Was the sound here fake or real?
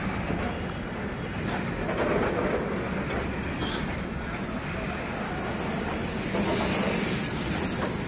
real